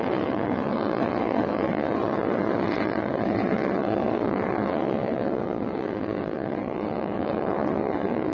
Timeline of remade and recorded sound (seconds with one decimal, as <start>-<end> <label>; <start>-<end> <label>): 0.0-8.3 remade